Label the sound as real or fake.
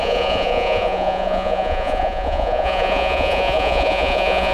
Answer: fake